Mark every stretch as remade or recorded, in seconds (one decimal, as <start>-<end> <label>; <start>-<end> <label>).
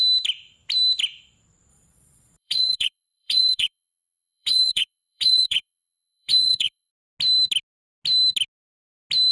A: 0.0-1.7 recorded; 1.7-6.9 remade; 6.9-9.3 recorded